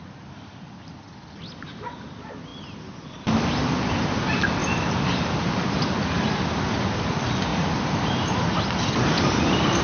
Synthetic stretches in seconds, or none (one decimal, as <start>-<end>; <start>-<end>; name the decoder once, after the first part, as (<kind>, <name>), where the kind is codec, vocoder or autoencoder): 7.5-8.1 (vocoder, BigVGAN v2)